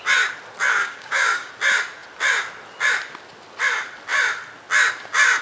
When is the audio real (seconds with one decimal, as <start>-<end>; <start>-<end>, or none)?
0.0-0.8; 1.5-5.4